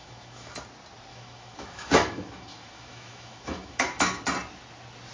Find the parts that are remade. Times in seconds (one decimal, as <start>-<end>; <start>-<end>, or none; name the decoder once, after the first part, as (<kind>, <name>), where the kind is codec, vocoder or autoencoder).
0.0-0.6 (autoencoder, DAC-VAE); 1.1-4.2